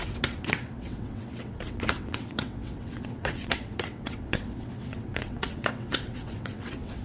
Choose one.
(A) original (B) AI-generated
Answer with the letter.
B